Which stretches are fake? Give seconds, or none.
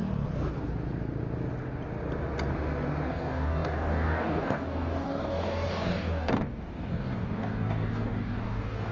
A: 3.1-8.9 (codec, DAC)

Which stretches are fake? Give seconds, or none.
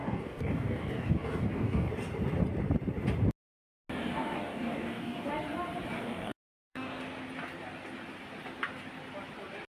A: 0.0-1.9 (codec, DAC); 4.2-5.3; 6.0-7.0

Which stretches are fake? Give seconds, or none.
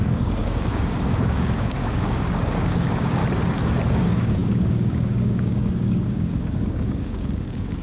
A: 0.0-3.2 (codec, DAC); 3.9-7.8